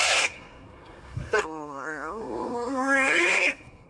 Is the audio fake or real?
fake